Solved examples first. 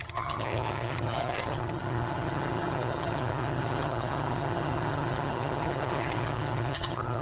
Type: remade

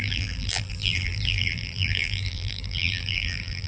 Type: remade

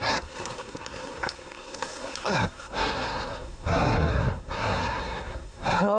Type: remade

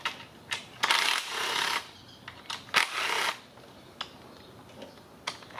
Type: recorded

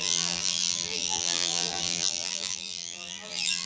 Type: remade